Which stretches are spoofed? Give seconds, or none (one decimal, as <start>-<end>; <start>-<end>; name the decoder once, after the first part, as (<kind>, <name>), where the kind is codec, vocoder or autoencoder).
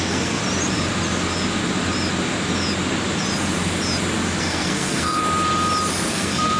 0.0-0.4 (codec, SNAC); 4.4-5.2; 6.1-6.6